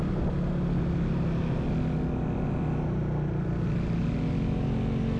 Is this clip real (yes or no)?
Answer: yes